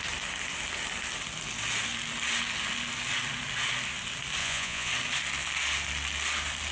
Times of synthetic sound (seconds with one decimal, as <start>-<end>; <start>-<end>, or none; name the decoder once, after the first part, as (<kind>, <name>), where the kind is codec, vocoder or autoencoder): 4.4-4.9 (vocoder, Vocos)